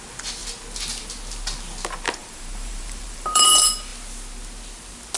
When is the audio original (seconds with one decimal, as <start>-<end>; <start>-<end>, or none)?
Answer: 0.0-2.2; 3.5-5.2